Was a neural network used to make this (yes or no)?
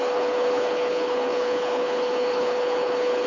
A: yes